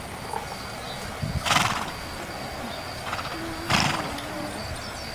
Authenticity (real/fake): real